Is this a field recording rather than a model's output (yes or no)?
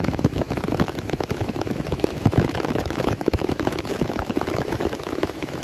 no